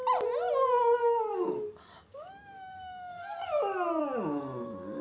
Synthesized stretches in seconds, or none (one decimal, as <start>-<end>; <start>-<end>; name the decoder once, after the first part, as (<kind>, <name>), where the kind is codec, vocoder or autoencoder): 1.0-4.0 (codec, DAC)